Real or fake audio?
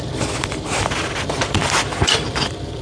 fake